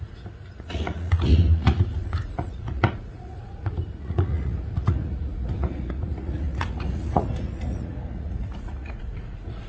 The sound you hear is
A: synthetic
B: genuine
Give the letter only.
A